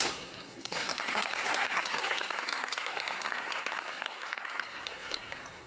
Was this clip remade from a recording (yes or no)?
yes